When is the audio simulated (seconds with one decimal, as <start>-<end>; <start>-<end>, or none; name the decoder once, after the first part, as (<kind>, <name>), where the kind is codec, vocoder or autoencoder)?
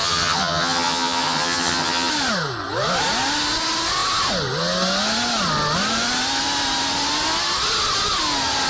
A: 0.0-2.1 (vocoder, HiFi-GAN)